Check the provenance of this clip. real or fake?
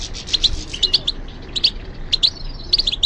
real